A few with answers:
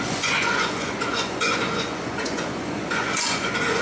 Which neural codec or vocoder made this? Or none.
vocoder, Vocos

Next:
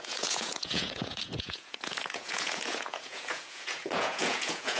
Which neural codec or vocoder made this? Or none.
vocoder, Vocos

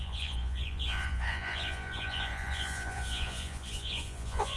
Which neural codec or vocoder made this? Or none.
vocoder, Vocos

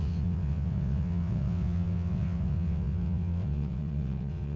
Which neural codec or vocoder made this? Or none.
vocoder, WaveNeXt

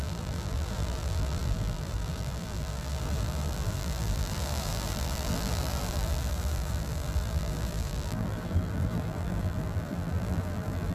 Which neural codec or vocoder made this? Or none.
vocoder, BigVGAN v2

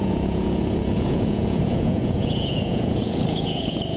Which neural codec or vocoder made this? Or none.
vocoder, Vocos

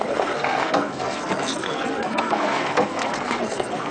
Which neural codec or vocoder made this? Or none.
codec, SNAC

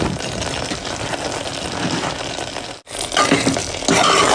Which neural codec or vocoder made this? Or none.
none